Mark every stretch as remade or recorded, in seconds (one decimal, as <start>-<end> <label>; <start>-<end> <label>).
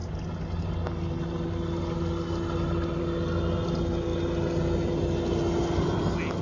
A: 0.0-6.4 recorded